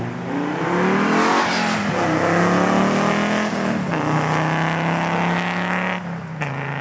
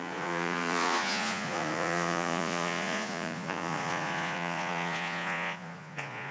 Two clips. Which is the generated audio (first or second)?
second